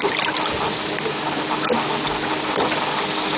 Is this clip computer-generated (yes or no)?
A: no